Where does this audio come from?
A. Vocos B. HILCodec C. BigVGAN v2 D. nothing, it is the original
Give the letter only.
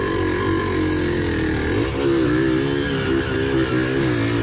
D